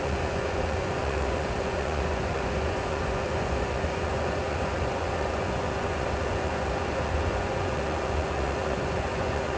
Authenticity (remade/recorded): remade